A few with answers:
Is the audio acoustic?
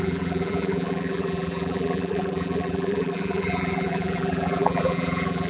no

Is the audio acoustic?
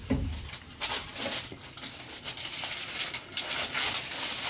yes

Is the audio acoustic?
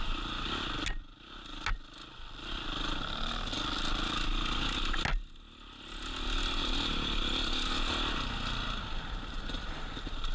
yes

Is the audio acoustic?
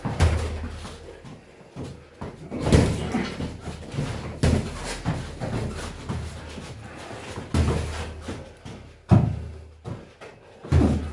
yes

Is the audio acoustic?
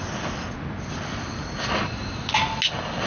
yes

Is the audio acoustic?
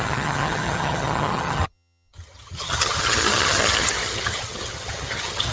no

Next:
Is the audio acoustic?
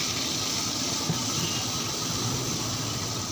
yes